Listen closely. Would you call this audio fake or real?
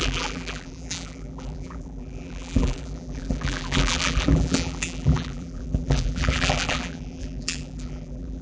fake